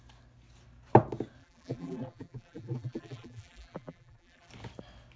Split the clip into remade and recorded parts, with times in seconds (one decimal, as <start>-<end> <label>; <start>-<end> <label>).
0.0-1.4 recorded; 1.4-4.5 remade; 4.5-5.2 recorded